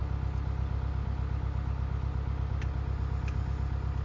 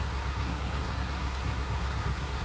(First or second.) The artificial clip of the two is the second